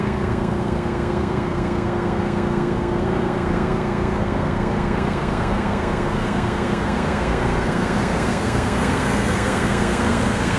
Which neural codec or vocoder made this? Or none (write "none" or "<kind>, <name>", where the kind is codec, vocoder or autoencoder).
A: codec, SNAC